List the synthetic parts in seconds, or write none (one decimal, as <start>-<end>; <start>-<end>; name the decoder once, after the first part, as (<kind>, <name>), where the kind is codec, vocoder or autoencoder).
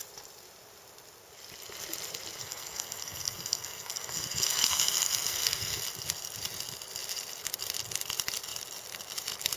2.4-5.8 (codec, SNAC)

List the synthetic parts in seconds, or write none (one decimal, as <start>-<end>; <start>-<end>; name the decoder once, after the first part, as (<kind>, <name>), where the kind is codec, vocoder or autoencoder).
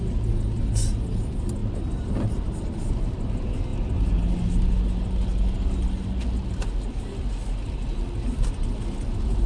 none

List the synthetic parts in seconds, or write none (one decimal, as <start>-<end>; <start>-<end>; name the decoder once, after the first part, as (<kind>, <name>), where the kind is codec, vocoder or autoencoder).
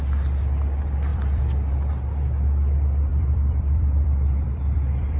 1.1-1.7 (vocoder, BigVGAN v2); 3.1-5.2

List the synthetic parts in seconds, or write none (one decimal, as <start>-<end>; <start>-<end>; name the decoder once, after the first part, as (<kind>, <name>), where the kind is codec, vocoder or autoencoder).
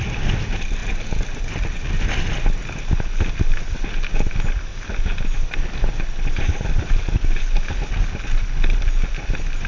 none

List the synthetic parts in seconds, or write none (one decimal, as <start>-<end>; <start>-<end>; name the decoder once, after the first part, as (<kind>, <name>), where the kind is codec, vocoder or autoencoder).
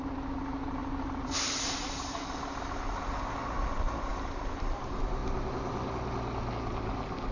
0.8-2.4 (vocoder, BigVGAN v2); 4.1-4.8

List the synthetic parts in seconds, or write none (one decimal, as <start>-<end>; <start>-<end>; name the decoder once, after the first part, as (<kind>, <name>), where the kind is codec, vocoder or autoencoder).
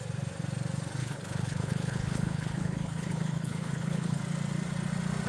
1.0-4.2 (codec, HILCodec)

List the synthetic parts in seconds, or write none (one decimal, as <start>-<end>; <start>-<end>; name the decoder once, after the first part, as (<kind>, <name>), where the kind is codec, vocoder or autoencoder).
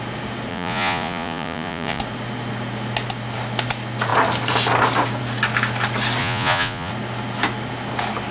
0.5-2.0 (vocoder, Vocos); 6.2-6.9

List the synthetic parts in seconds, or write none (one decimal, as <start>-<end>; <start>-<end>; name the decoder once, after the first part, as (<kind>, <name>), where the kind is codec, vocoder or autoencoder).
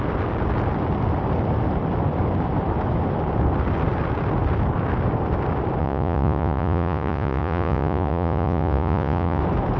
5.8-9.4 (vocoder, Vocos)